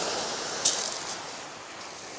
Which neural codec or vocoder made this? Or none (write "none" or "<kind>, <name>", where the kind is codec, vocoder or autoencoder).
none